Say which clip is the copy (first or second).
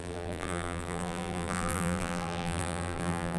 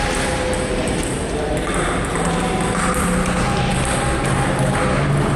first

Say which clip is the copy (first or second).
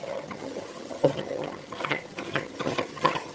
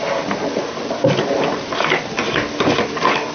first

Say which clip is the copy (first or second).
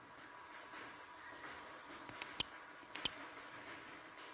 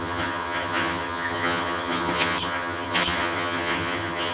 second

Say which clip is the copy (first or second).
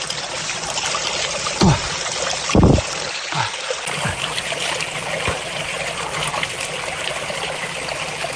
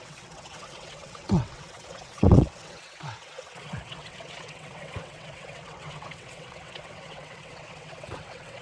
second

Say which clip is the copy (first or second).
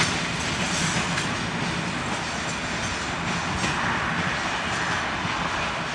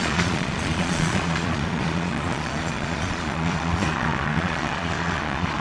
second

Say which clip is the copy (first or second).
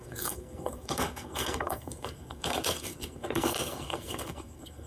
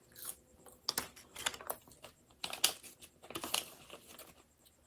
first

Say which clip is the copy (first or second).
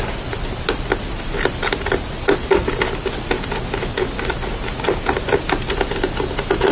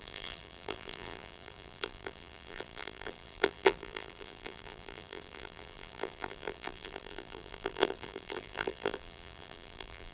second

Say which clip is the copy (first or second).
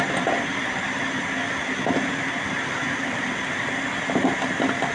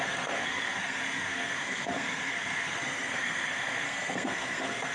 second